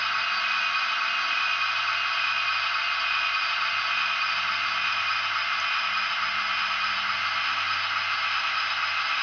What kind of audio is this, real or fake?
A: real